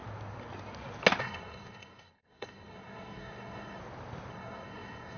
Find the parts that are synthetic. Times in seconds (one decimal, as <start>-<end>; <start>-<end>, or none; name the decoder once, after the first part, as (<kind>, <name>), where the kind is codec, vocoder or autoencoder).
1.2-3.8 (codec, SNAC); 4.3-5.2